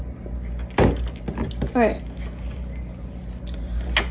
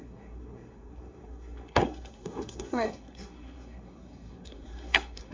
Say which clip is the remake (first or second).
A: second